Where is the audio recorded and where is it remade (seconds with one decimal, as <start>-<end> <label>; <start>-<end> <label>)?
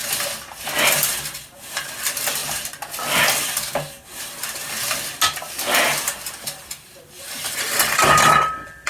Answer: 0.0-8.9 recorded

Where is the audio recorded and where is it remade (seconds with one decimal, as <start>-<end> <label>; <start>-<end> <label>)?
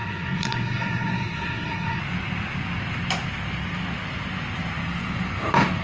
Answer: 0.0-2.0 remade; 2.0-5.8 recorded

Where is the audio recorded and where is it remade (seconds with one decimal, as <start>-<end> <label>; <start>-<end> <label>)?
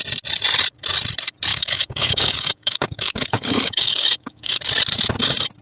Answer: 0.0-1.5 recorded; 1.5-4.7 remade; 4.7-5.6 recorded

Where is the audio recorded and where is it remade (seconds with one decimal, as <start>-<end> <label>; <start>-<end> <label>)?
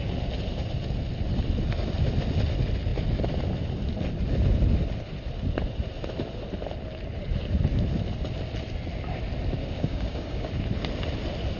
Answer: 0.0-9.6 recorded; 9.6-10.5 remade; 10.5-11.6 recorded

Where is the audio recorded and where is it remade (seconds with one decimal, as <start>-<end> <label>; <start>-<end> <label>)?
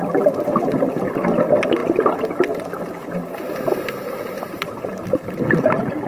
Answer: 0.0-6.1 recorded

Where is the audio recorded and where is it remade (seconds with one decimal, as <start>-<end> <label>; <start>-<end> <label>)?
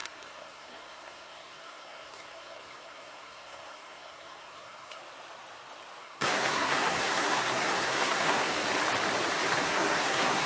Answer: 0.0-5.0 remade; 5.0-6.0 recorded; 6.0-8.6 remade; 8.6-9.6 recorded; 9.6-10.5 remade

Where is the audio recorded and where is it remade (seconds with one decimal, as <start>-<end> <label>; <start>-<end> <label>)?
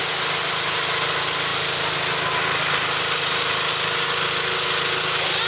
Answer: 0.0-5.5 recorded